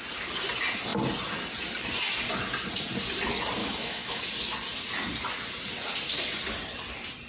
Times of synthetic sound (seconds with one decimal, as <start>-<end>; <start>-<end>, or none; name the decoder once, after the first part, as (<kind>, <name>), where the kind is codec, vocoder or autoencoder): 3.6-4.2 (autoencoder, DAC-VAE)